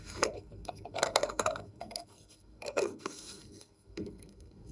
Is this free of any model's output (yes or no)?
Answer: no